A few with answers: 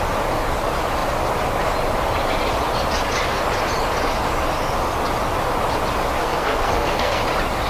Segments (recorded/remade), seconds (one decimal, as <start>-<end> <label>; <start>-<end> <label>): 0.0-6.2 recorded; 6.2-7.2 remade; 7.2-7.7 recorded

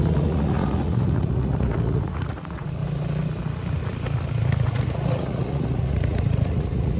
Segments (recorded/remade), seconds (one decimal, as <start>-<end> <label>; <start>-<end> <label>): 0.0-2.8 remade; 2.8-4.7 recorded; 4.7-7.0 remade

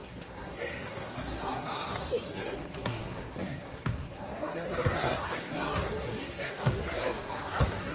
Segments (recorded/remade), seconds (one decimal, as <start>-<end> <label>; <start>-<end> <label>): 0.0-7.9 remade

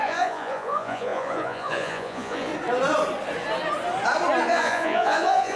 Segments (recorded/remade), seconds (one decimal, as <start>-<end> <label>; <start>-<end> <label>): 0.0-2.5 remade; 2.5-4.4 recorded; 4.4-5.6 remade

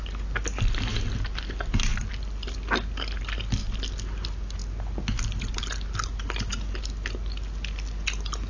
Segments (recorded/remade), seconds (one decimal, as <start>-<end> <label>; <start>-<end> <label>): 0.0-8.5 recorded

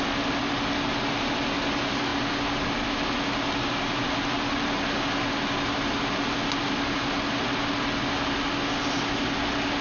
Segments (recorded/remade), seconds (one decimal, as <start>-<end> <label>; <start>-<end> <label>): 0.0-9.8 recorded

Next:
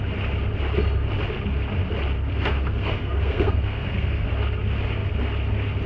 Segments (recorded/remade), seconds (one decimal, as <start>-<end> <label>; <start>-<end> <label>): 0.0-2.3 recorded; 2.3-4.3 remade; 4.3-5.9 recorded

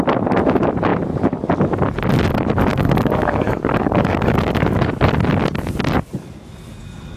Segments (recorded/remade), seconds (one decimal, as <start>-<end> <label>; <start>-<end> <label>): 0.0-2.7 recorded; 2.7-4.8 remade; 4.8-7.2 recorded